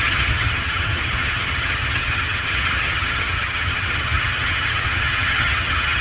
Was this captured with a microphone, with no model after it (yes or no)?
no